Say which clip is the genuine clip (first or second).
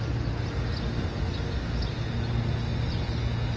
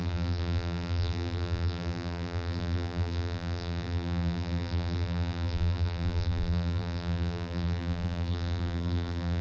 first